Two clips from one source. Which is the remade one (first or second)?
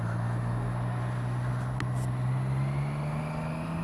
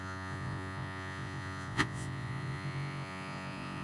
second